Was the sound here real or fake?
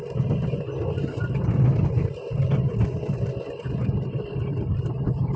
fake